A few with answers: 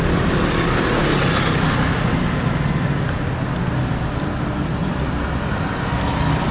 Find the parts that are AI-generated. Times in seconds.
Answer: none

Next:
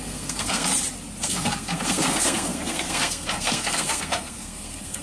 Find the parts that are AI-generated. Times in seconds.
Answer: 0.0-0.7 (codec, SNAC); 1.2-5.0

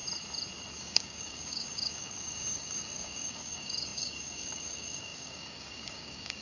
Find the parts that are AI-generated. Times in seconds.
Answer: 0.8-6.4 (codec, DAC)

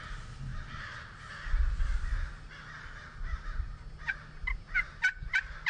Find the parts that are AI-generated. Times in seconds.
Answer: none

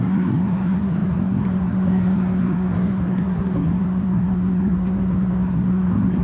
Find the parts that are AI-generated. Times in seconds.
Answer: 0.0-6.2 (codec, SNAC)

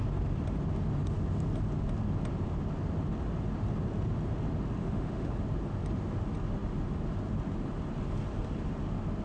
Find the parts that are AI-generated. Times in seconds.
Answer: 4.8-5.3 (autoencoder, DAC-VAE)